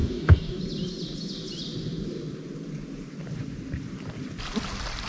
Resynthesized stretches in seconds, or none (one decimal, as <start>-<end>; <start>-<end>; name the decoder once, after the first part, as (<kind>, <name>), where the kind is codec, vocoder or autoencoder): 0.0-0.6 (codec, DAC)